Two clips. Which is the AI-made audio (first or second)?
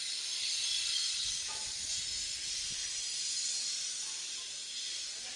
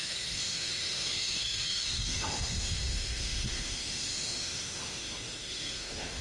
second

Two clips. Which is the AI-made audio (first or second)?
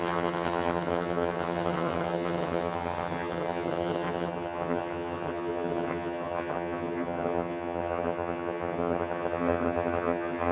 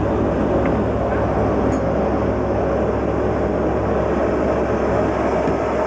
first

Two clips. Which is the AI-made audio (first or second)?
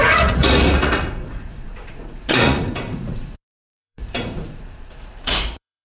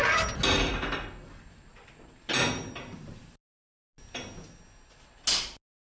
first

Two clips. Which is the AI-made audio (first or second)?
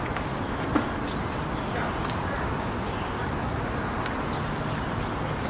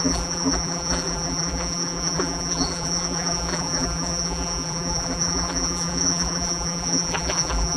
second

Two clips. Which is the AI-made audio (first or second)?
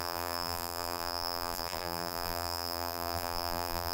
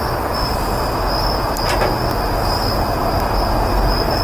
first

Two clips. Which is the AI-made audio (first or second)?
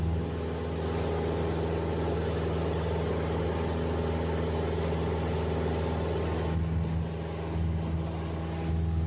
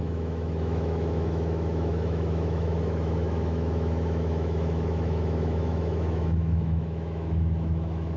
second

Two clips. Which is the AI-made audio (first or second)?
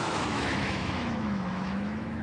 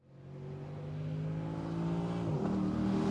first